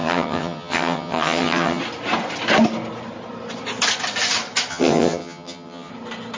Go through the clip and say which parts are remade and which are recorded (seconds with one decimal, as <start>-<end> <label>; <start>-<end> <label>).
0.0-1.8 remade; 1.8-4.7 recorded; 4.7-5.9 remade; 5.9-6.4 recorded

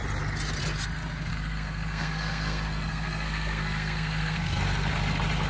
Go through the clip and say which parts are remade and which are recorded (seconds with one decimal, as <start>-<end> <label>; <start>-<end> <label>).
0.0-1.3 recorded; 1.3-4.6 remade; 4.6-5.5 recorded

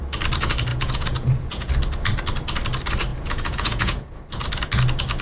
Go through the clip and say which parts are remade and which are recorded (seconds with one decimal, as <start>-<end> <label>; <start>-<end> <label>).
0.0-0.7 recorded; 0.7-1.7 remade; 1.7-3.1 recorded; 3.1-4.1 remade; 4.1-5.2 recorded

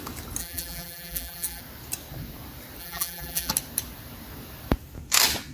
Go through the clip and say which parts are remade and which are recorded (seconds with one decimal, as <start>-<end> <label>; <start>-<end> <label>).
0.0-0.4 recorded; 0.4-1.6 remade; 1.6-2.8 recorded; 2.8-3.5 remade; 3.5-5.5 recorded

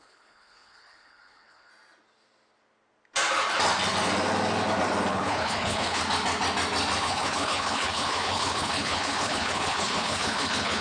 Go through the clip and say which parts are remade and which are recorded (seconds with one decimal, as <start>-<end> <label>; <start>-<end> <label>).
0.0-1.7 remade; 1.7-5.1 recorded; 5.1-6.0 remade; 6.0-7.0 recorded; 7.0-10.8 remade

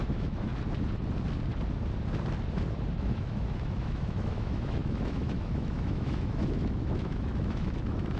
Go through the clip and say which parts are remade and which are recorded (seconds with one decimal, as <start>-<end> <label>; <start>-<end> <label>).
0.0-0.5 remade; 0.5-3.0 recorded; 3.0-8.2 remade

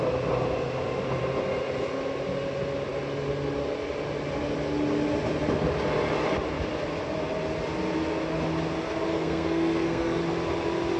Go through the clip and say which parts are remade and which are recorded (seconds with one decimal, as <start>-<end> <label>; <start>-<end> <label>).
0.0-9.1 recorded; 9.1-10.2 remade; 10.2-11.0 recorded

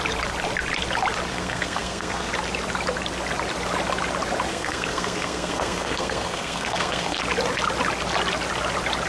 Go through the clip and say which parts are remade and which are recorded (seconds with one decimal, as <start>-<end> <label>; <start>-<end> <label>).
0.0-1.3 recorded; 1.3-2.3 remade; 2.3-4.5 recorded; 4.5-7.2 remade; 7.2-9.1 recorded